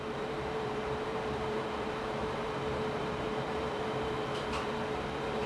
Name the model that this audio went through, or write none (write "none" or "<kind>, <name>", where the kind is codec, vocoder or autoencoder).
vocoder, BigVGAN v2